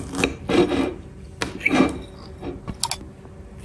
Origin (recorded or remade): recorded